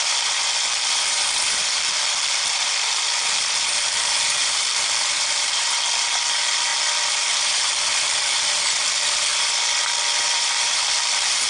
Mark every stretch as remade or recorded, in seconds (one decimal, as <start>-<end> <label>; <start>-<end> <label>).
0.0-9.3 remade; 9.3-9.8 recorded; 9.8-11.5 remade